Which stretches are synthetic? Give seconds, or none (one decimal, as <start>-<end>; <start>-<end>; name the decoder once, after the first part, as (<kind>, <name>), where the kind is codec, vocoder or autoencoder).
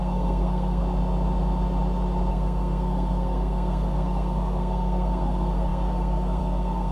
0.0-0.8 (codec, SNAC); 2.3-6.9